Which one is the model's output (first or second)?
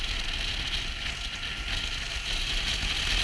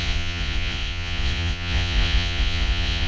second